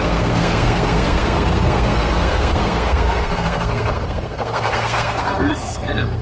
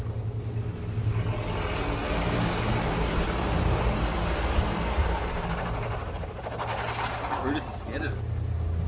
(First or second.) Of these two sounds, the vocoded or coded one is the first